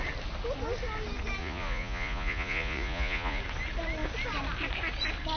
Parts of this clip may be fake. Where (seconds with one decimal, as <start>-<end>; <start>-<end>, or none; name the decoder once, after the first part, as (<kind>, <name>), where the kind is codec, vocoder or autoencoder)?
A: 1.4-3.4 (vocoder, Vocos)